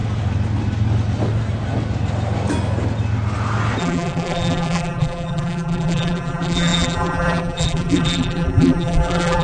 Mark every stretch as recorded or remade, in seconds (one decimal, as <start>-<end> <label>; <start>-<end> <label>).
0.0-3.8 recorded; 3.8-9.4 remade